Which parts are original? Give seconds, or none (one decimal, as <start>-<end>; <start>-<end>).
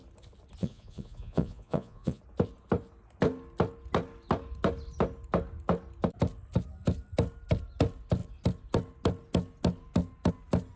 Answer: 0.0-0.6; 2.2-10.8